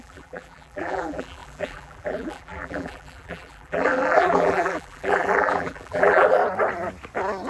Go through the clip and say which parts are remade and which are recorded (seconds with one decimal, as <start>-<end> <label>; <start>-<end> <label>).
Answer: 0.0-6.4 remade; 6.4-7.5 recorded